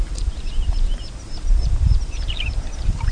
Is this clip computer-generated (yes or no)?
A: yes